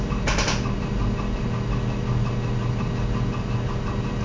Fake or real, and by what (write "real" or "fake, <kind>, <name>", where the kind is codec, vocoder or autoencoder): real